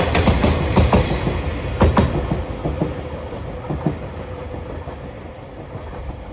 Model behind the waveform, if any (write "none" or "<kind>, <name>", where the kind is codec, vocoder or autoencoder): none